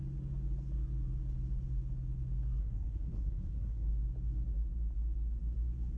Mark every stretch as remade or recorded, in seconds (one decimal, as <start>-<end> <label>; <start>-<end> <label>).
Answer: 0.0-2.6 recorded; 2.6-3.9 remade; 3.9-6.0 recorded